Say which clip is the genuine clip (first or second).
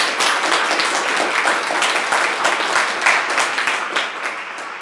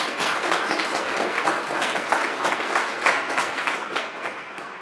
first